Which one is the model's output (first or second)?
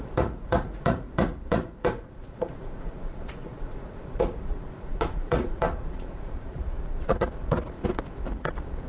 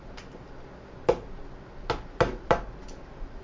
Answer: first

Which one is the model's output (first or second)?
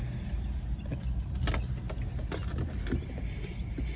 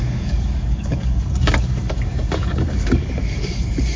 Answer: second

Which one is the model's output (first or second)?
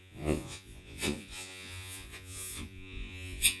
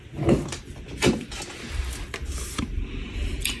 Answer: first